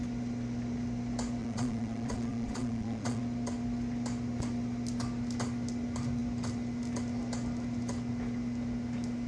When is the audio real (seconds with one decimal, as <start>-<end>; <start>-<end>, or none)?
0.0-1.4; 3.2-9.3

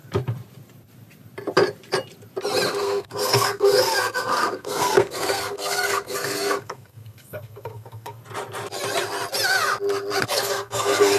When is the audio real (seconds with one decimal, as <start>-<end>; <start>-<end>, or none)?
0.0-2.8; 8.2-10.2

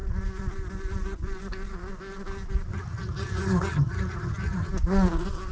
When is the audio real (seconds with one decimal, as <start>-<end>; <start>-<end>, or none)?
0.0-2.7; 4.7-5.5

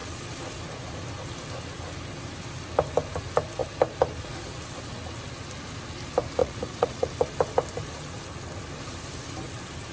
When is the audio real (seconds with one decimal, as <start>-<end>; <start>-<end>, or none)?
0.0-6.4; 7.1-9.9

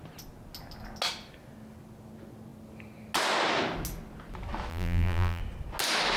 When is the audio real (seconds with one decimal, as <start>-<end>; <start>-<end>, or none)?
0.0-4.7; 5.4-6.2

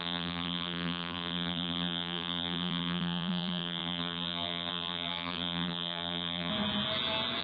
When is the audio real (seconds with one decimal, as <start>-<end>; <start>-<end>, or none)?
6.5-7.4

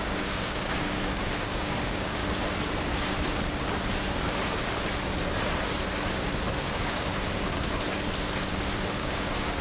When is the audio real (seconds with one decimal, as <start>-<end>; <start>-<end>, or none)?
2.2-6.6; 7.1-9.0

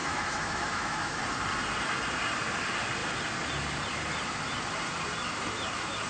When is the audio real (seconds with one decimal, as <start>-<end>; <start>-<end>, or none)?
1.2-6.1